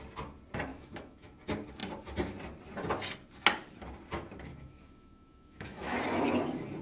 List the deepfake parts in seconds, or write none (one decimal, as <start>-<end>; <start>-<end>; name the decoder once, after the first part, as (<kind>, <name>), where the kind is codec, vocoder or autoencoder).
0.7-1.3 (autoencoder, DAC-VAE); 4.5-6.0